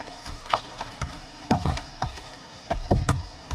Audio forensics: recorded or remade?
remade